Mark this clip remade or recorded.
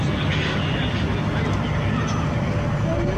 recorded